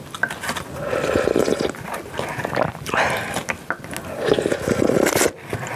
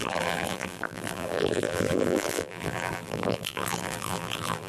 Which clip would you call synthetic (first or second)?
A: second